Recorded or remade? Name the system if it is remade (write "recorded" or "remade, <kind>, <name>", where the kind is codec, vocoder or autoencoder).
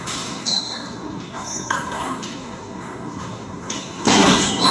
remade, codec, SNAC